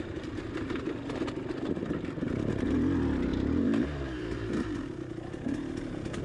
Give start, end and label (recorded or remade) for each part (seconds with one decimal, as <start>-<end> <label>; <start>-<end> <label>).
0.0-3.3 recorded; 3.3-4.8 remade; 4.8-6.2 recorded